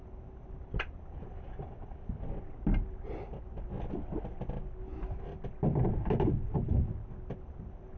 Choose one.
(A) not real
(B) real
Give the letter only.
B